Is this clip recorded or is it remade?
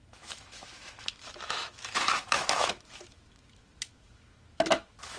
remade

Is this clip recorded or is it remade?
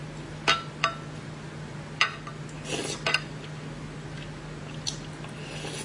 recorded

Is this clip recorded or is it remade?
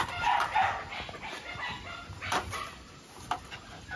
recorded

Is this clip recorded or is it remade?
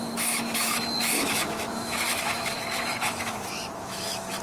remade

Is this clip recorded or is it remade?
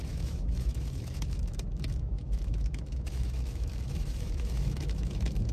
remade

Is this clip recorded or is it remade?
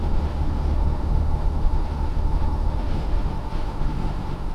remade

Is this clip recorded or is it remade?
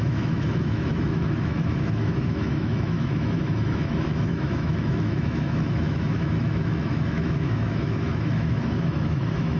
remade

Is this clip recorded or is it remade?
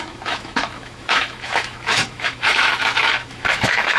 remade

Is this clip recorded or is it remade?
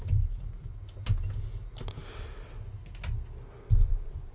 recorded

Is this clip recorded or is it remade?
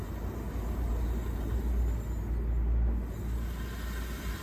recorded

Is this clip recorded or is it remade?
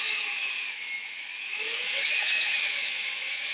remade